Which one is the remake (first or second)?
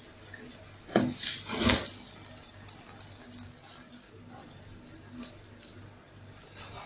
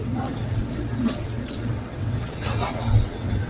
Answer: second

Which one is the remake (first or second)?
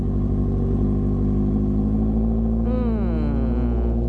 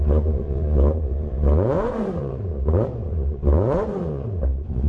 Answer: second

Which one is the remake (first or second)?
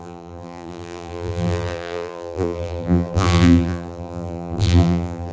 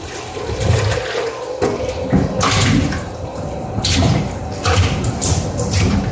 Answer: first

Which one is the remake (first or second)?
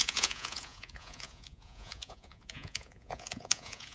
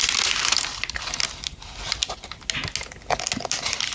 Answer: first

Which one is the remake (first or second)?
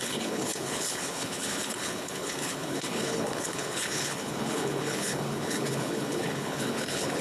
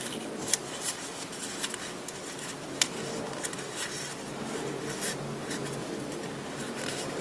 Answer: first